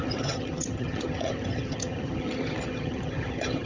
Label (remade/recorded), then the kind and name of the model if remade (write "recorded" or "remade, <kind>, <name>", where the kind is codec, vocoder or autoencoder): remade, vocoder, HiFi-GAN